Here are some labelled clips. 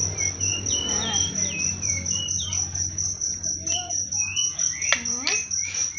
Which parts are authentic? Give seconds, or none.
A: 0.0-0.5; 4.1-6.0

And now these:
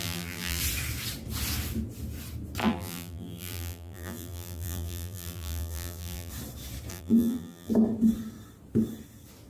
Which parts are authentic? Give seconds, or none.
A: 0.6-2.6; 6.3-6.9; 7.7-9.5